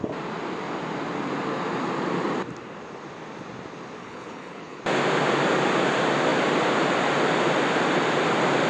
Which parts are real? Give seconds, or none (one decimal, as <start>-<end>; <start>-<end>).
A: 0.0-4.0; 4.8-8.7